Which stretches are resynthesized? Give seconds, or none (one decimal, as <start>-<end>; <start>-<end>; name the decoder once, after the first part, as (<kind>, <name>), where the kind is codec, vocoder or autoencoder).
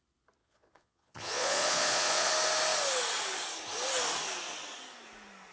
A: 0.4-2.3 (vocoder, Vocos)